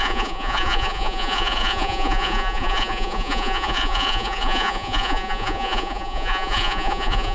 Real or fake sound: fake